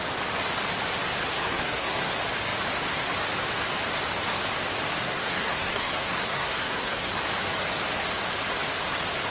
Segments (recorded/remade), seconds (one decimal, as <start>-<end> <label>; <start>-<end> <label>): 0.0-1.3 recorded; 1.3-2.1 remade; 2.1-5.0 recorded; 5.0-7.1 remade; 7.1-9.3 recorded